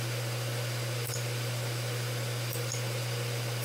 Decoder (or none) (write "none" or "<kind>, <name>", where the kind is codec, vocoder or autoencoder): none